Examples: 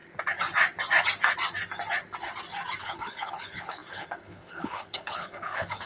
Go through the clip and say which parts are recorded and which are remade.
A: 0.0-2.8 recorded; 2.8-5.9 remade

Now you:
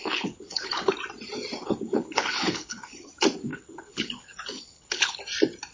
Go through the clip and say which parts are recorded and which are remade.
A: 0.0-0.9 remade; 0.9-1.6 recorded; 1.6-3.1 remade; 3.1-3.5 recorded; 3.5-5.2 remade; 5.2-5.7 recorded

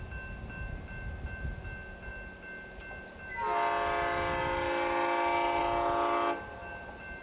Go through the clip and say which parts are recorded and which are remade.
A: 0.0-7.2 recorded

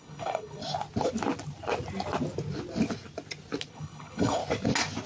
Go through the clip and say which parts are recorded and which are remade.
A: 0.0-0.6 remade; 0.6-3.7 recorded; 3.7-4.4 remade; 4.4-5.1 recorded

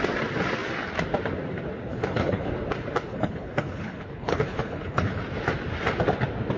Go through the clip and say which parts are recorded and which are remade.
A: 0.0-1.9 recorded; 1.9-2.5 remade; 2.5-3.1 recorded; 3.1-5.2 remade; 5.2-6.6 recorded

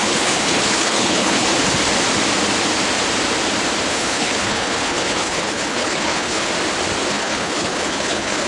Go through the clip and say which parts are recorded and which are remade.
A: 0.0-1.5 remade; 1.5-3.9 recorded; 3.9-6.5 remade; 6.5-7.1 recorded; 7.1-8.5 remade

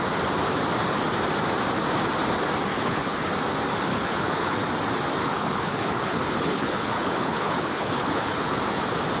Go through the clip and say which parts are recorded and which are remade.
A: 0.0-2.7 recorded; 2.7-3.3 remade; 3.3-3.9 recorded; 3.9-4.6 remade; 4.6-5.2 recorded; 5.2-8.6 remade; 8.6-9.2 recorded